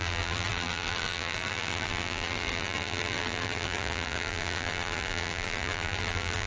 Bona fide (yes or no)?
no